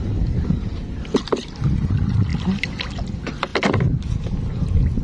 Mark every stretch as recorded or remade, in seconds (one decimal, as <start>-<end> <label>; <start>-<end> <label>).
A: 0.0-3.5 recorded; 3.5-5.0 remade